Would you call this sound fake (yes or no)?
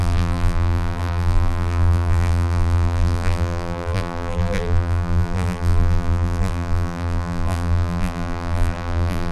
yes